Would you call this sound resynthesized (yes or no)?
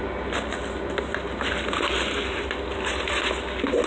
no